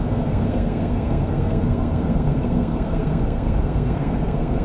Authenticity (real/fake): fake